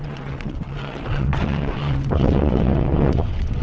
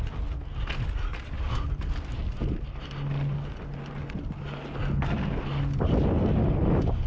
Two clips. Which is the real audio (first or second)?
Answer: second